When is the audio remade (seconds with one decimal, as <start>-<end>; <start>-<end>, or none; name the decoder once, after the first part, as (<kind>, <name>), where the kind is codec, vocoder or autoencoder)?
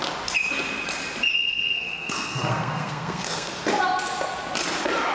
1.3-3.5 (codec, SNAC)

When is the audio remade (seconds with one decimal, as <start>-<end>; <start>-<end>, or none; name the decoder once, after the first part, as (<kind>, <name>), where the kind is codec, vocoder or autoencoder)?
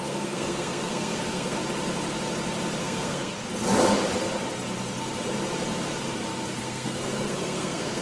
0.0-1.6 (codec, SNAC); 2.8-3.3; 6.6-8.0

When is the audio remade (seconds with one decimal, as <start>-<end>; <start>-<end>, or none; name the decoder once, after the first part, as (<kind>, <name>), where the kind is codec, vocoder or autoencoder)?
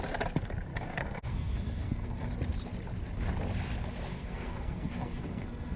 0.7-2.3 (codec, SNAC); 4.1-5.8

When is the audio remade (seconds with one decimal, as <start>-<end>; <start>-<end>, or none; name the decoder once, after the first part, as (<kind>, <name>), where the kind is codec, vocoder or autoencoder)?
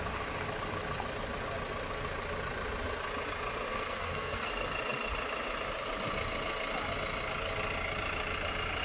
3.7-4.5 (codec, SNAC)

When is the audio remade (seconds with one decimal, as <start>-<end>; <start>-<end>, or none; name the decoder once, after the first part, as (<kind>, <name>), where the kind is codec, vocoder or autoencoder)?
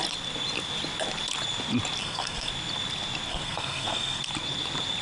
2.0-2.5 (codec, SNAC); 3.3-4.2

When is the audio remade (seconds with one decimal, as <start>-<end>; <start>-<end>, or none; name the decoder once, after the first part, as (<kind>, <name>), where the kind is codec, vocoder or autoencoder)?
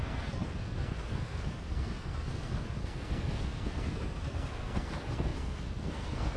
0.0-6.4 (codec, SNAC)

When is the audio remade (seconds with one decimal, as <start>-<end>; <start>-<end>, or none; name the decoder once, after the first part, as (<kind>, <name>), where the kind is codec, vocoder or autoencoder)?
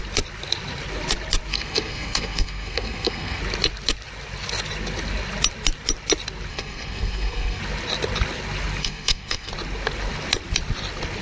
1.5-3.4 (codec, SNAC); 6.5-7.6; 8.8-9.5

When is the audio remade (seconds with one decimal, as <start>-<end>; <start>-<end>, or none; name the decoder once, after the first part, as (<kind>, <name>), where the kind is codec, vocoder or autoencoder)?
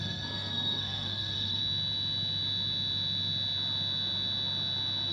0.0-1.6 (codec, SNAC)